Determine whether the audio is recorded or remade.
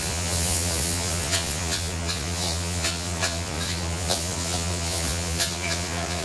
remade